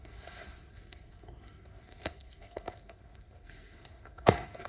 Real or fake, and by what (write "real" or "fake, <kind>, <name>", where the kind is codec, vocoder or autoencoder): fake, codec, SNAC